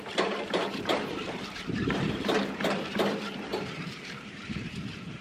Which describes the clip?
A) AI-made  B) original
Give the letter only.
A